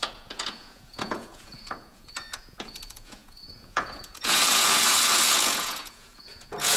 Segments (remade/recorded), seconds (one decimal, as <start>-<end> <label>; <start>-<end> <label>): 0.0-6.8 remade